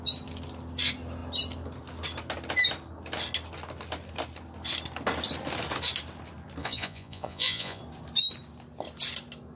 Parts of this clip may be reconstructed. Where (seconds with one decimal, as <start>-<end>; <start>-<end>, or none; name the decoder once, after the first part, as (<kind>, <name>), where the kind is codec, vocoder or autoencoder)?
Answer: 6.6-7.8 (vocoder, Vocos)